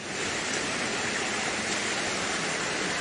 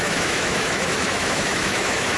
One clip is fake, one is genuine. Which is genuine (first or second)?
first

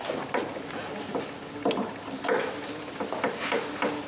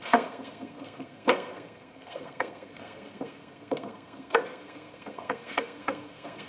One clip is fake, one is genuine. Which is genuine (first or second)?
first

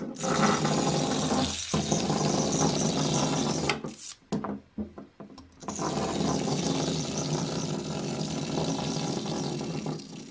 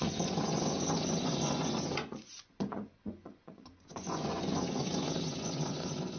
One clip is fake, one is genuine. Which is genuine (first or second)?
first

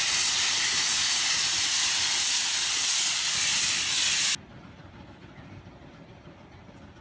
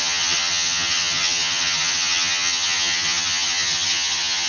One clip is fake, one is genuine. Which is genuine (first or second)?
first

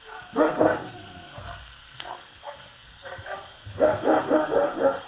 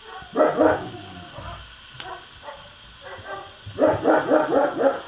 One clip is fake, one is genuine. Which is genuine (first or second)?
second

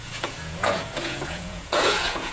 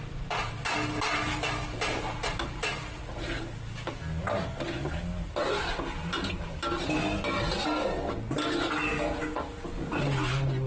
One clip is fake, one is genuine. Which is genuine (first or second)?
second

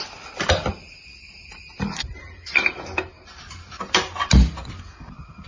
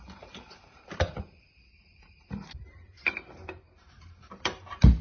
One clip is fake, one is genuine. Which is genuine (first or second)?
first